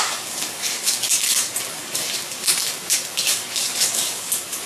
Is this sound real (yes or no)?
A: no